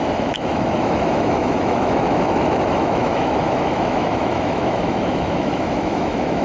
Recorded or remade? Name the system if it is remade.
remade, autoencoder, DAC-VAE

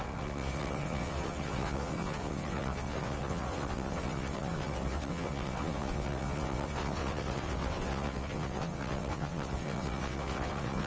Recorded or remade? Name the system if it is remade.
remade, vocoder, WaveNeXt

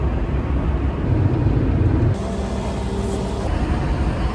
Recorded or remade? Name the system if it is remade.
recorded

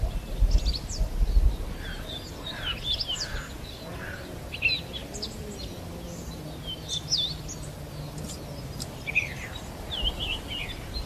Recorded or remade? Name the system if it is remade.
recorded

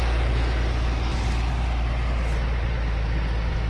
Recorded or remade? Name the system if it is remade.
recorded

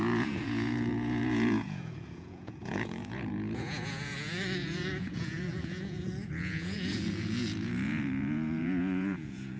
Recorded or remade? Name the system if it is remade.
remade, vocoder, Vocos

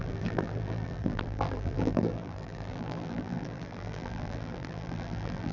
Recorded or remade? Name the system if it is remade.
remade, vocoder, BigVGAN v2